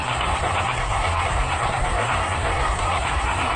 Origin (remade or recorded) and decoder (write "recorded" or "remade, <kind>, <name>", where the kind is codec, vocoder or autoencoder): remade, codec, SNAC